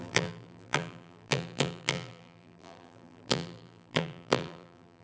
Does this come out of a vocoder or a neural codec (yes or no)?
yes